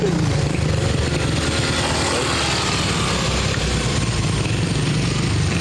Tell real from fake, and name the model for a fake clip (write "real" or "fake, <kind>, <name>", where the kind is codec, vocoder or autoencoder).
real